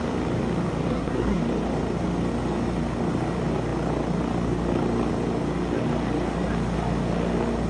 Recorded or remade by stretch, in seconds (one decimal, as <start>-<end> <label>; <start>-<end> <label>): 0.0-0.9 recorded; 0.9-1.4 remade; 1.4-7.7 recorded